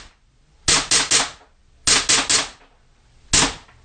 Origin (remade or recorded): recorded